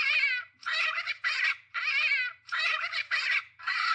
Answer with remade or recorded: remade